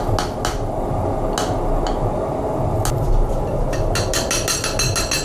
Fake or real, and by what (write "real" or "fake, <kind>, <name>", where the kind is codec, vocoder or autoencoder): real